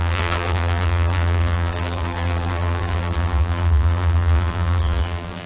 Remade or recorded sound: remade